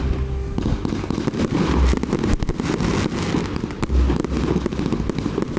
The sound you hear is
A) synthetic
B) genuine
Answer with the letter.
B